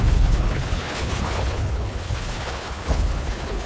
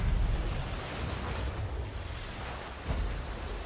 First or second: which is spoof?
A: first